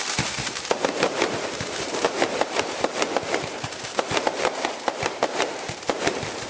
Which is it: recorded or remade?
remade